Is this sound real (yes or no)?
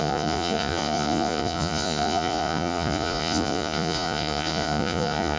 no